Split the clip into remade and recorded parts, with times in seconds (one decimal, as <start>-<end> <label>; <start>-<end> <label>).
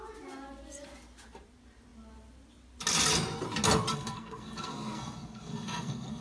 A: 0.0-3.9 recorded; 3.9-6.2 remade